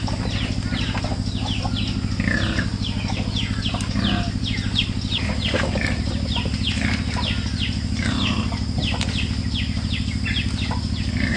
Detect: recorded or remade recorded